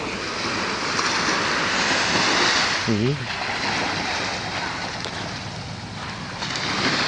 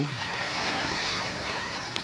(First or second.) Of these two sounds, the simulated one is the second